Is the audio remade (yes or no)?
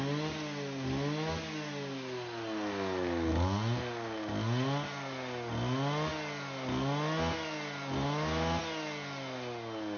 no